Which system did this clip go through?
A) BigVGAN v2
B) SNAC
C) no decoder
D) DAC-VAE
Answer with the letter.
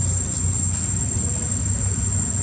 C